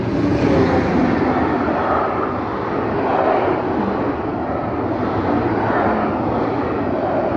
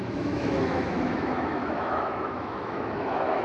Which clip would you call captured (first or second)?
first